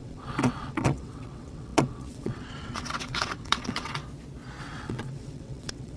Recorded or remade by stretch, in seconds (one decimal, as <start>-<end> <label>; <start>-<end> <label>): 0.0-4.0 remade; 4.0-4.6 recorded; 4.6-6.0 remade